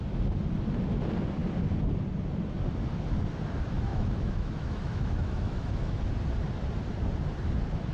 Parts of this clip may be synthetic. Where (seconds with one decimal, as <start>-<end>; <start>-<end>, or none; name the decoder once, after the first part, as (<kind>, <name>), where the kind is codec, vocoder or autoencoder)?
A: 3.9-6.0 (autoencoder, DAC-VAE)